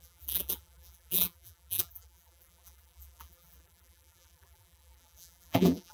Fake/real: fake